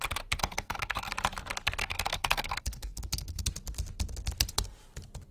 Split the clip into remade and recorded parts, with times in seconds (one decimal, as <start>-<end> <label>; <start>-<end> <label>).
0.0-0.4 recorded; 0.4-1.1 remade; 1.1-1.8 recorded; 1.8-3.4 remade; 3.4-5.3 recorded